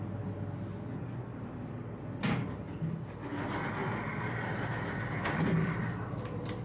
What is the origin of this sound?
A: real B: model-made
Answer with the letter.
A